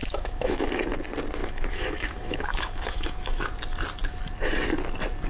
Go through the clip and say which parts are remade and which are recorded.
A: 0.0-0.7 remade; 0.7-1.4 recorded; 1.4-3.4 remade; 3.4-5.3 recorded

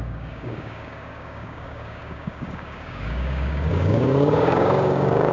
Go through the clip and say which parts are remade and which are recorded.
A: 0.0-5.3 remade

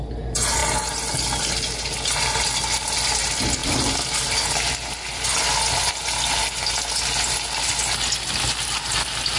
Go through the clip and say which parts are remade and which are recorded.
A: 0.0-9.4 recorded